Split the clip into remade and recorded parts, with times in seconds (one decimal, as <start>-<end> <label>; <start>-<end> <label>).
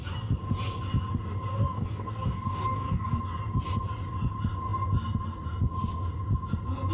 0.0-1.5 recorded; 1.5-3.2 remade; 3.2-6.9 recorded